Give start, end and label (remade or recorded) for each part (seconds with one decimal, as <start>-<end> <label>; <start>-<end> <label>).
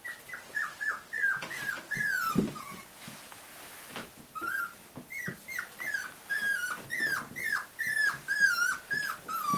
0.0-9.6 recorded